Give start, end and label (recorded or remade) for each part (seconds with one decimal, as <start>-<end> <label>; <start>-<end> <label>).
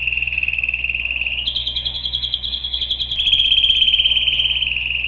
0.0-1.6 recorded; 1.6-2.8 remade; 2.8-5.1 recorded